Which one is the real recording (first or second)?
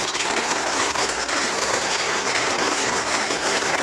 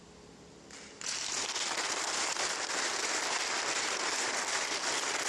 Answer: second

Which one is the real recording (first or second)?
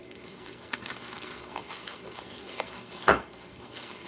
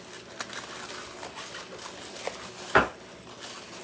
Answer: second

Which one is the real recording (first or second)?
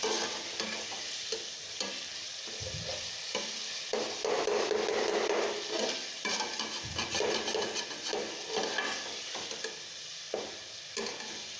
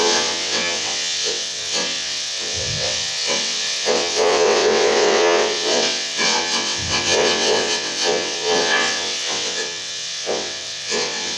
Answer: first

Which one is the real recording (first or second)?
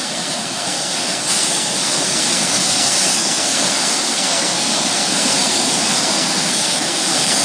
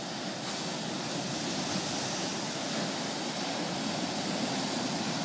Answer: second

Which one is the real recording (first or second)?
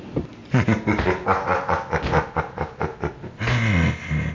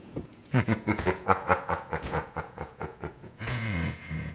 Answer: first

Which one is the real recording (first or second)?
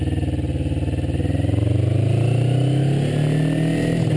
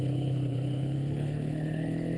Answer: first